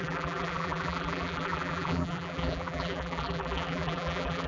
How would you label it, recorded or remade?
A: remade